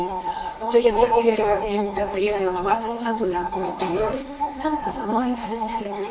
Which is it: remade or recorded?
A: remade